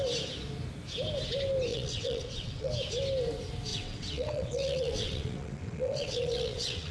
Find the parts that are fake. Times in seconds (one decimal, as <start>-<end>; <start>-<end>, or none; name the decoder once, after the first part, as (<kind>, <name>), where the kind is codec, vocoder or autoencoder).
1.7-2.7 (vocoder, WaveNeXt); 3.7-6.9